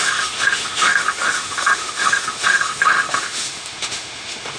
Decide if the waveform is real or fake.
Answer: fake